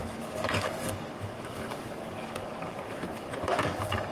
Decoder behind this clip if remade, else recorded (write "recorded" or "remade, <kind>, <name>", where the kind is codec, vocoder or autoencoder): remade, codec, DAC